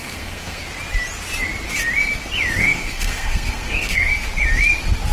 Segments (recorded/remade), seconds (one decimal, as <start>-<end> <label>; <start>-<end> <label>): 0.0-0.6 remade; 0.6-2.6 recorded; 2.6-4.1 remade; 4.1-5.1 recorded